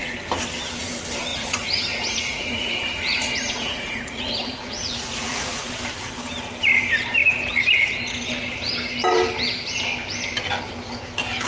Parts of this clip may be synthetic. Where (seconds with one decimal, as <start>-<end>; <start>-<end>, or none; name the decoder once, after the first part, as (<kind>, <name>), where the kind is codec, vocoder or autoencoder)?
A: 1.3-5.7 (vocoder, Vocos)